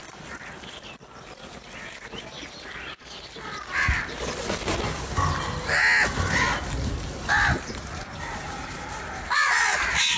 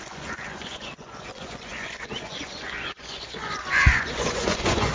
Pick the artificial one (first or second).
second